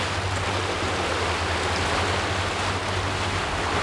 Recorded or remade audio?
recorded